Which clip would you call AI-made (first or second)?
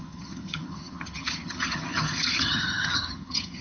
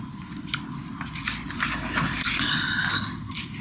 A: first